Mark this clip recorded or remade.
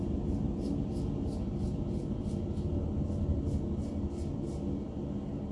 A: recorded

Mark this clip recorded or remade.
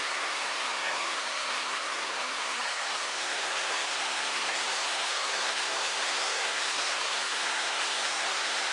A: remade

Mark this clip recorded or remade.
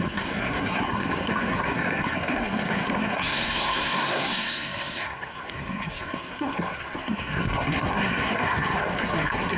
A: remade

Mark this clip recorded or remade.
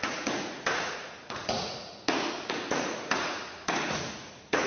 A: remade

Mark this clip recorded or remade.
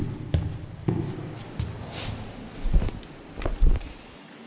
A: recorded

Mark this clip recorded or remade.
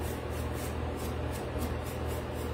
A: recorded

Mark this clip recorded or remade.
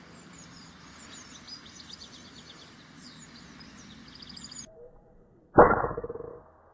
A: remade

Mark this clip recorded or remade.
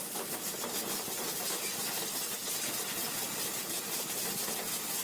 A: recorded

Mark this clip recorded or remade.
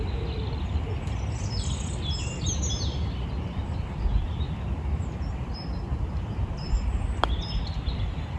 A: recorded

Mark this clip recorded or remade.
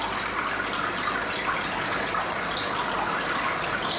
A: recorded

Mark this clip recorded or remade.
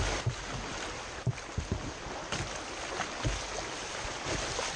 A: recorded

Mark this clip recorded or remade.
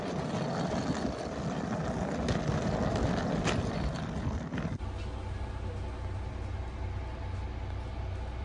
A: recorded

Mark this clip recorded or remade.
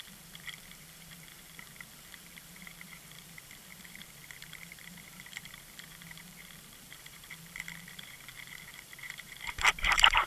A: remade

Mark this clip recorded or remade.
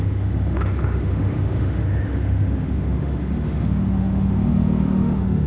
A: remade